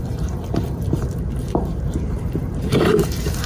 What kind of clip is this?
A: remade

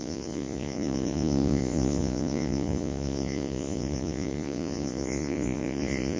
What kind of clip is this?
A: remade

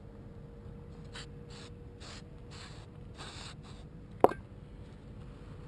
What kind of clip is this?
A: recorded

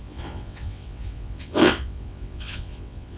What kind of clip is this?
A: remade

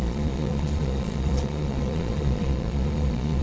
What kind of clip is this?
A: remade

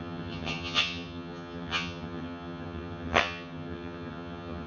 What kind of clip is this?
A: remade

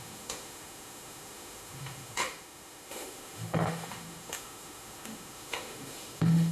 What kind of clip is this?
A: remade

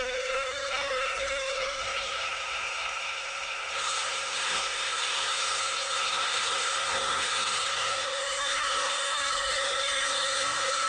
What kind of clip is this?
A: remade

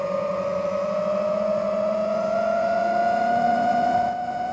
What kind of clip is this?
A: remade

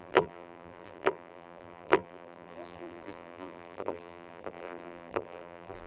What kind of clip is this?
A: remade